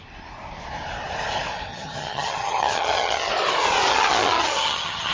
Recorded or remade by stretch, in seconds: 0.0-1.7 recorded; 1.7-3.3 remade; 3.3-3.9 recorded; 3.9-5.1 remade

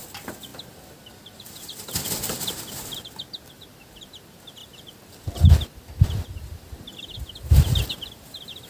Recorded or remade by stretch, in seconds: 0.0-8.7 recorded

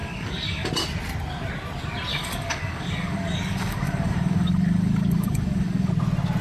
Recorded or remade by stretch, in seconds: 0.0-0.7 remade; 0.7-2.1 recorded; 2.1-5.9 remade; 5.9-6.4 recorded

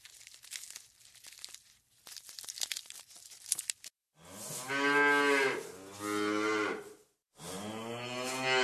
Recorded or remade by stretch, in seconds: 0.0-8.6 recorded